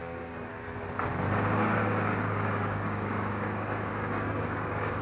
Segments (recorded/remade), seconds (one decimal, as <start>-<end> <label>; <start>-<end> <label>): 0.0-0.5 remade; 0.5-1.8 recorded; 1.8-5.0 remade